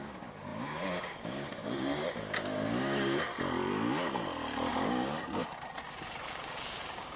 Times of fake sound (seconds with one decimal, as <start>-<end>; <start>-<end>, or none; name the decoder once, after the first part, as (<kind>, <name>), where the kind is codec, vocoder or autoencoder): 0.0-3.3 (codec, DAC); 4.7-5.4; 6.3-7.2

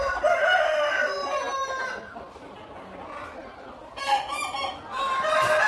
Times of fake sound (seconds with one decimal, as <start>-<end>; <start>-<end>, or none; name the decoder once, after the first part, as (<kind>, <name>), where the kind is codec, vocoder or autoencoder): none

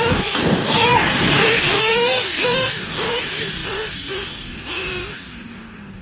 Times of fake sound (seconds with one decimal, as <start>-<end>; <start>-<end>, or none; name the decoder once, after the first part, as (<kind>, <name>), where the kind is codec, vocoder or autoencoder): 0.0-6.0 (codec, DAC)

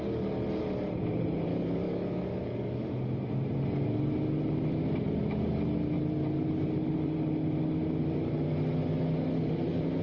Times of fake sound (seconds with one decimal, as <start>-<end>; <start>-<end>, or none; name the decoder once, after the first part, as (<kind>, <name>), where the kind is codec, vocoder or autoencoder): 1.5-2.9 (codec, DAC)